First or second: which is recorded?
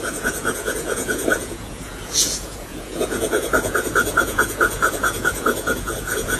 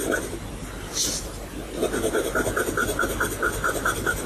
second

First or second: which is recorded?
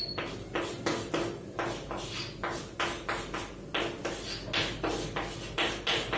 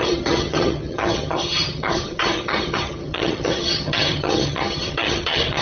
first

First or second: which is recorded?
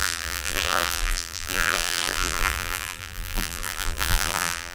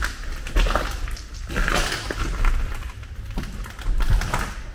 second